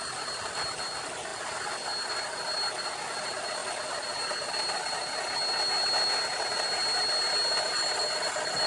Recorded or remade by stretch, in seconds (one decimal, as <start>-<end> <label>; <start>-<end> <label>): 0.0-8.7 recorded